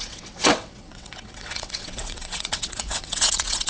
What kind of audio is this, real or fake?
fake